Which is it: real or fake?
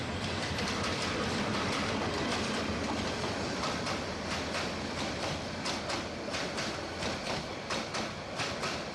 real